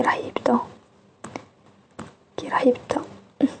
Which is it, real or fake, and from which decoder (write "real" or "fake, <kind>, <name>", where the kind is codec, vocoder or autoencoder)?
real